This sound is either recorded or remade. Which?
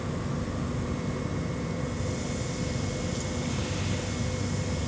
recorded